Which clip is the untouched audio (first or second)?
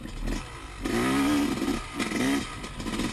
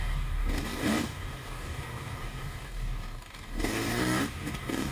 first